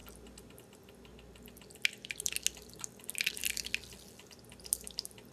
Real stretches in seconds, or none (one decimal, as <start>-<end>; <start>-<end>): 0.0-5.3